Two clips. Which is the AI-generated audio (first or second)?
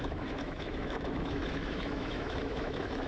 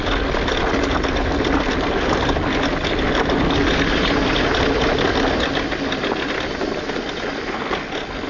first